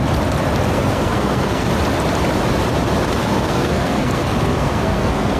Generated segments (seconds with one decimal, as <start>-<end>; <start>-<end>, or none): 0.7-1.7; 3.2-5.4